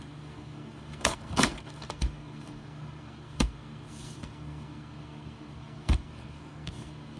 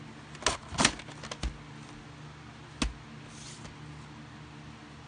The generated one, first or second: first